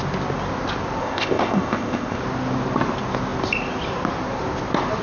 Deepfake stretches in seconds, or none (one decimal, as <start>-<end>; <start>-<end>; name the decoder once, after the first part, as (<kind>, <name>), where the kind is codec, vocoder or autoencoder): 1.0-2.2 (codec, ZipCodec)